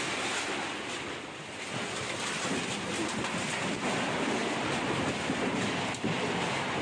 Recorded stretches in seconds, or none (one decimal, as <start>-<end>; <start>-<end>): 0.0-6.8